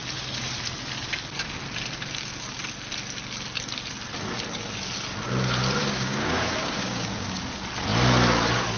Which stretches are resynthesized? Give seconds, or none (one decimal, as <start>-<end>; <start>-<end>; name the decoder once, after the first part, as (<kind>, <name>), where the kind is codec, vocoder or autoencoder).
5.8-7.4 (codec, DAC)